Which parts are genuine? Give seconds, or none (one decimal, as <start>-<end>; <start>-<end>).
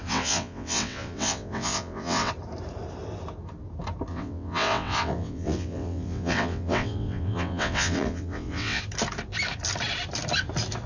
2.3-4.1; 8.8-10.9